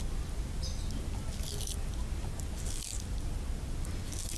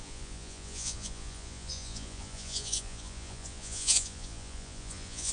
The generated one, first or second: second